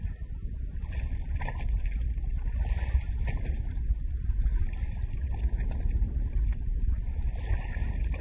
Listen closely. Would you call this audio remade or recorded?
recorded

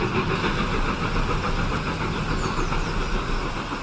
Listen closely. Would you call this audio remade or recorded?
recorded